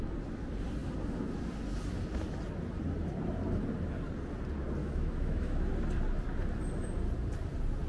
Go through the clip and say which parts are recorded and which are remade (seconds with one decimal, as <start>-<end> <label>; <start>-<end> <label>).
0.0-4.8 recorded; 4.8-5.7 remade; 5.7-7.9 recorded

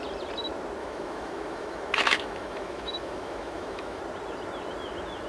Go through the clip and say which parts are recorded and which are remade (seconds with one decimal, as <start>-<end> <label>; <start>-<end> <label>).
0.0-0.8 recorded; 0.8-4.0 remade; 4.0-5.3 recorded

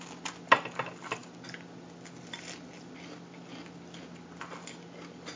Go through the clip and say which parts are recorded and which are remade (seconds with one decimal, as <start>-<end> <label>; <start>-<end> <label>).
0.0-5.4 recorded

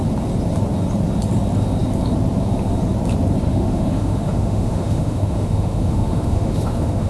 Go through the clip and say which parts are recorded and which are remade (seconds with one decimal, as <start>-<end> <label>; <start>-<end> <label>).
0.0-3.5 recorded; 3.5-7.1 remade

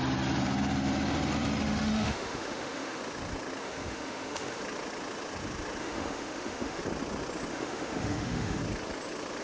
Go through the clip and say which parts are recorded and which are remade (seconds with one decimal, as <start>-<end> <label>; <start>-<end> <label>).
0.0-1.6 recorded; 1.6-3.0 remade; 3.0-3.6 recorded; 3.6-4.6 remade; 4.6-5.8 recorded; 5.8-6.8 remade; 6.8-7.5 recorded; 7.5-8.6 remade; 8.6-9.4 recorded